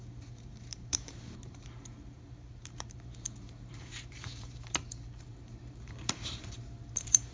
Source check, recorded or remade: remade